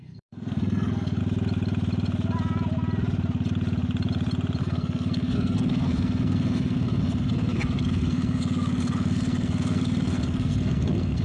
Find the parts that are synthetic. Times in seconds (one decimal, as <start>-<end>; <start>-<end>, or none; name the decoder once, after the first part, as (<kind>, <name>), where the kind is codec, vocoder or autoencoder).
0.0-1.2 (codec, SNAC); 4.6-11.2